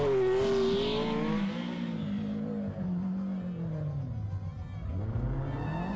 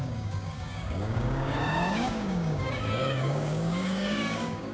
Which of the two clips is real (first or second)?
first